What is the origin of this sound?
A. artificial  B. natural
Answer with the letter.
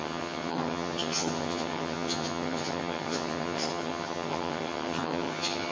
A